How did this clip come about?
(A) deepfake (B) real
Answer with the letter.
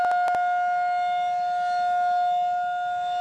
B